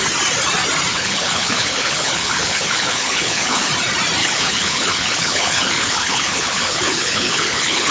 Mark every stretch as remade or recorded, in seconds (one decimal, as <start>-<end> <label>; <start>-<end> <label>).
0.0-0.9 recorded; 0.9-3.7 remade; 3.7-4.2 recorded; 4.2-7.9 remade